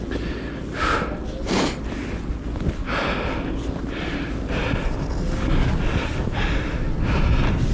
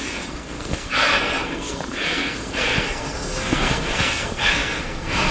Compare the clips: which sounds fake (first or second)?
second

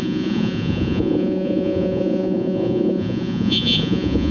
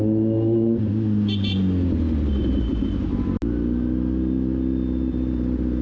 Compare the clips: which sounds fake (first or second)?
first